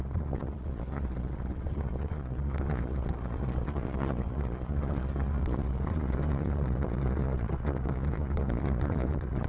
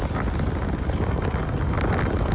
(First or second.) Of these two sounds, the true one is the second